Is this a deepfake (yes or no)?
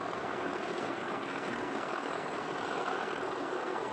yes